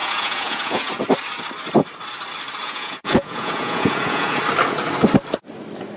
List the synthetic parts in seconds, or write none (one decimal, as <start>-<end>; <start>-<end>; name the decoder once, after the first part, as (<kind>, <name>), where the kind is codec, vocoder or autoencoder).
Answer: 0.0-1.0 (vocoder, Vocos); 2.6-4.4